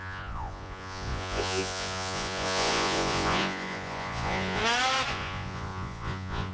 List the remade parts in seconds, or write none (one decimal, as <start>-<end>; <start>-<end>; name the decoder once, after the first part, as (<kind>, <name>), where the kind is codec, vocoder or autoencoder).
0.0-4.6 (vocoder, Vocos); 5.1-6.5

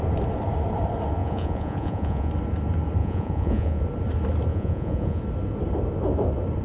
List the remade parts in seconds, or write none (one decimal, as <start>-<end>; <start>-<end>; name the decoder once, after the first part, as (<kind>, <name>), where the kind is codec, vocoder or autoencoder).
1.2-2.3 (vocoder, Vocos); 3.0-3.8; 4.5-5.2